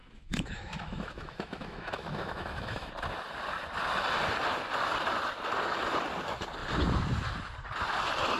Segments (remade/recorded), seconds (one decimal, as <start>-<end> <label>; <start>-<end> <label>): 0.0-2.9 remade; 2.9-8.4 recorded